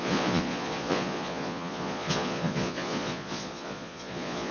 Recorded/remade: remade